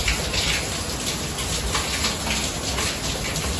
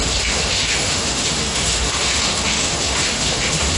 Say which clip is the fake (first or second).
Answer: second